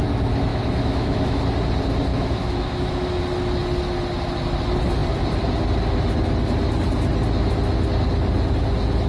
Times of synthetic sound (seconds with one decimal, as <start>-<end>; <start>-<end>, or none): 0.5-1.4; 2.1-3.2